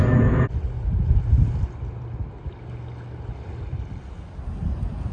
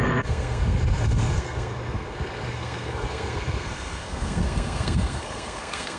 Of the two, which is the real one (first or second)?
first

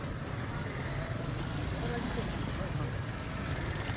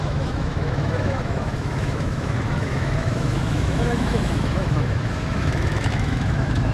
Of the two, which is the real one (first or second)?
first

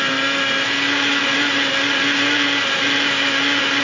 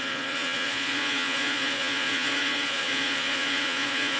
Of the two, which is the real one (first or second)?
first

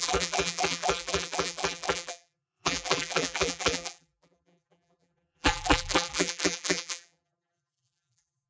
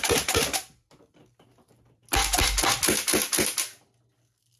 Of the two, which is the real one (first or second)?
second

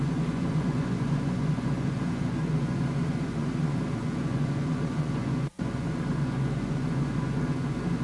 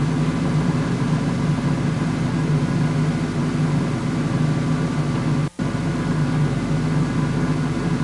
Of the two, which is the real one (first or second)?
second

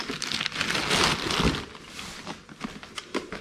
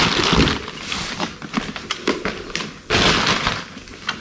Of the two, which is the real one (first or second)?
first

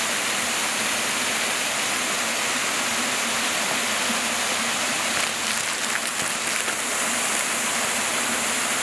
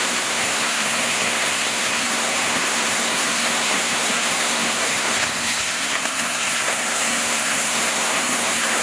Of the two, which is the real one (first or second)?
first